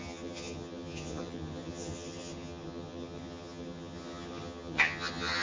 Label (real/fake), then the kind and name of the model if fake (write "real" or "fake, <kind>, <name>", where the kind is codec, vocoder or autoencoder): fake, vocoder, HiFi-GAN